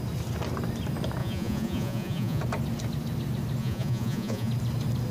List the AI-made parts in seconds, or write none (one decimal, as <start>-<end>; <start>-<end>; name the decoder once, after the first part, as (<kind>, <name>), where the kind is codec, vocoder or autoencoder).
1.2-2.4 (vocoder, Vocos); 3.6-4.5